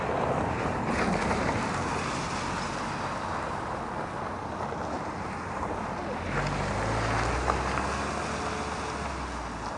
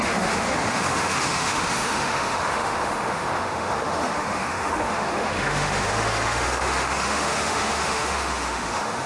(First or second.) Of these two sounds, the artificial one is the second